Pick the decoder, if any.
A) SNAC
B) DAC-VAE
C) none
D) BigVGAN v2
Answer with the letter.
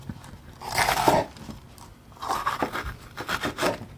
D